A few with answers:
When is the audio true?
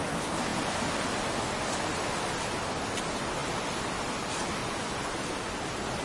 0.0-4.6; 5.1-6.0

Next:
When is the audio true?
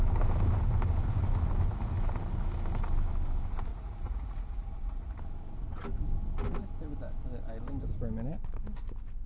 0.0-3.7; 5.2-9.3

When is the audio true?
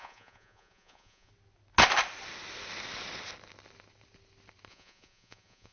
1.3-4.7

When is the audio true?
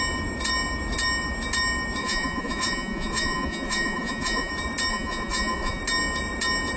0.0-2.0; 4.5-4.9; 5.8-6.8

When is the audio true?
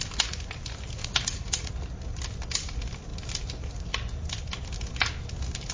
0.0-1.0; 1.7-5.7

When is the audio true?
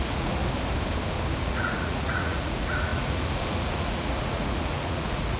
0.4-1.4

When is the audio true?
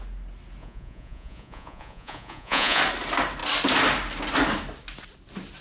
0.0-0.6; 2.8-5.6